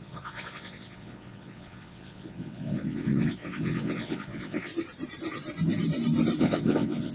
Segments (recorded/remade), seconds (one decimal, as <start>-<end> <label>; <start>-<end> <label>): 0.0-4.7 remade; 4.7-6.4 recorded; 6.4-7.1 remade